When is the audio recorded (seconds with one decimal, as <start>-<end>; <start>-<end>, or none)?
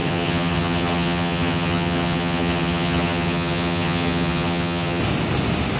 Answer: 5.0-5.8